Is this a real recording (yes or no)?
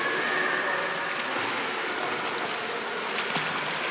yes